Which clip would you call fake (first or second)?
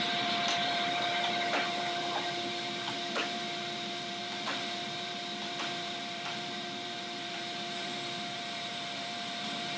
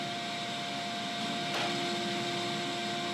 first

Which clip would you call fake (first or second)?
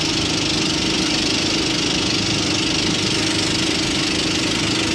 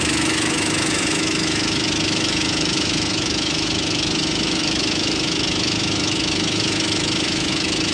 second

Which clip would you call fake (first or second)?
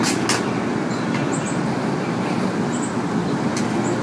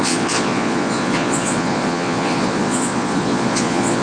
second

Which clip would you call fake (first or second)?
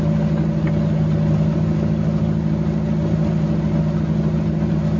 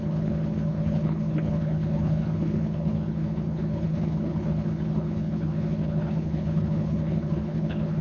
second